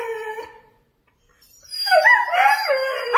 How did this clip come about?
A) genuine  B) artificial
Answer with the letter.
B